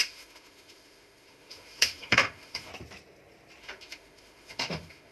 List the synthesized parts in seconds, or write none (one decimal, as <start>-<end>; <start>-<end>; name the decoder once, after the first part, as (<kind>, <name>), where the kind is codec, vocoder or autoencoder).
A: 0.0-2.7 (autoencoder, DAC-VAE); 3.6-5.1